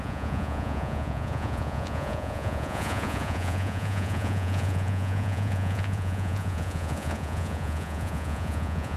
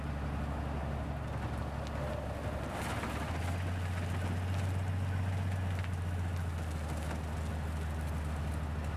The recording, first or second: second